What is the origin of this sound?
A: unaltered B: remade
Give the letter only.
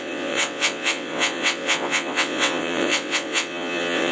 B